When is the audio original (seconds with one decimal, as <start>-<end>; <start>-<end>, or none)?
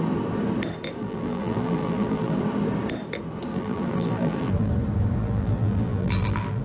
0.0-1.0; 2.4-3.5; 4.7-5.2